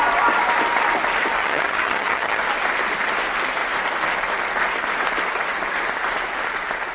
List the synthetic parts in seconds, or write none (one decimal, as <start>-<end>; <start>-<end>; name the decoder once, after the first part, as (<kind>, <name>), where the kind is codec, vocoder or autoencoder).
1.4-2.4 (vocoder, HiFi-GAN)